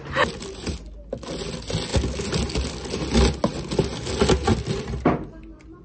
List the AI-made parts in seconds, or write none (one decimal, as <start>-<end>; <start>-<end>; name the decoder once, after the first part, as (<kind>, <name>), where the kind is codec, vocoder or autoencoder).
none